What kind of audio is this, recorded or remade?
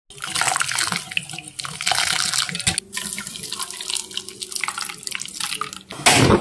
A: recorded